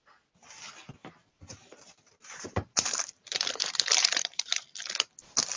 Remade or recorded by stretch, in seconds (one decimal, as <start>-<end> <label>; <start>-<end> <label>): 0.0-1.2 recorded; 1.2-4.6 remade; 4.6-5.6 recorded